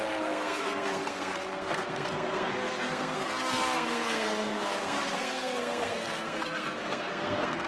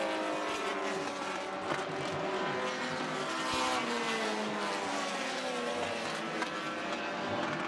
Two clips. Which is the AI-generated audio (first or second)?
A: first